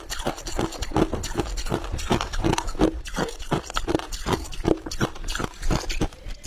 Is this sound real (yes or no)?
yes